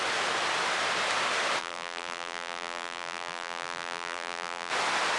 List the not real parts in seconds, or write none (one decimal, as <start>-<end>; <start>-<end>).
1.6-4.7